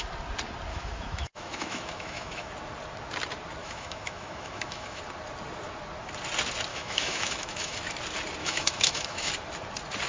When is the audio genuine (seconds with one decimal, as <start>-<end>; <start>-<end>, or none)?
0.0-0.7; 2.5-3.6; 5.0-6.7; 7.8-8.4; 9.3-10.1